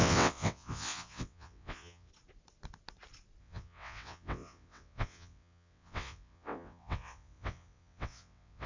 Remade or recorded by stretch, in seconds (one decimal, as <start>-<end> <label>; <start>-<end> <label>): 0.0-2.1 remade; 2.1-3.4 recorded; 3.4-8.7 remade